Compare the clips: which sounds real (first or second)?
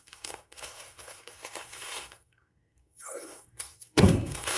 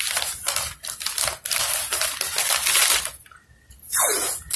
second